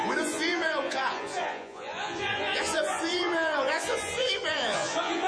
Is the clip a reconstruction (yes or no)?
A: yes